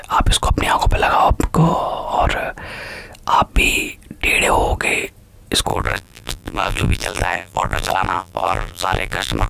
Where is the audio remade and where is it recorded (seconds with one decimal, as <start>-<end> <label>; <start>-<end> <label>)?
0.0-5.7 recorded; 5.7-9.5 remade